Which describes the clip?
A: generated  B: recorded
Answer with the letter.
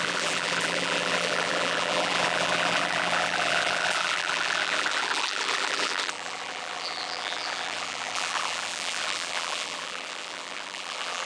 A